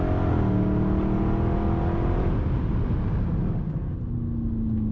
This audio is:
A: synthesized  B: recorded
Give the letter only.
B